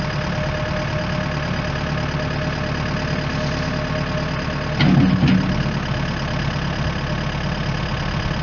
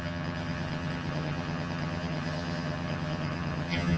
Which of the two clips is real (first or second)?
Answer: first